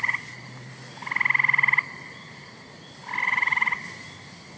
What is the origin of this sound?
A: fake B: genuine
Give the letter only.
B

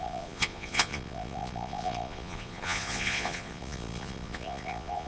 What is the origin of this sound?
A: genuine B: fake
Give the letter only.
B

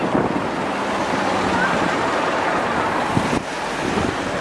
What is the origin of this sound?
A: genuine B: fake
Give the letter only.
A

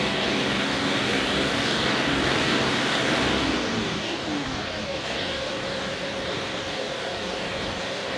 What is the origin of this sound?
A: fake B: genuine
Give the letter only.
A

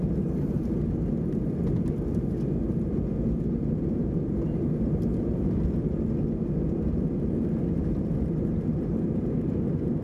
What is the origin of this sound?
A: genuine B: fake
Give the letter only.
A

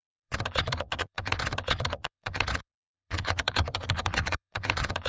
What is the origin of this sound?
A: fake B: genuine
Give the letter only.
A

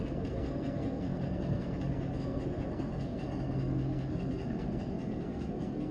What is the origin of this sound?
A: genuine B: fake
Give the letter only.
B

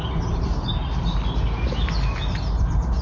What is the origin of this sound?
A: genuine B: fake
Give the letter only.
A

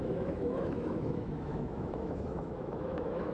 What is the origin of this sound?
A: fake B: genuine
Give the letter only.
A